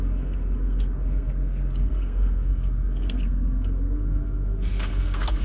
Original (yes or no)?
no